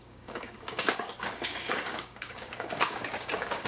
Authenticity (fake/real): fake